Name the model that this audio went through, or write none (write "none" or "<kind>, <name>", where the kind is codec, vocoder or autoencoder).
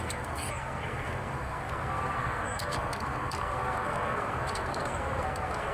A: codec, SNAC